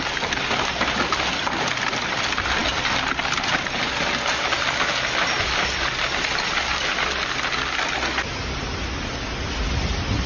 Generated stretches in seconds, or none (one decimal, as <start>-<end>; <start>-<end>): none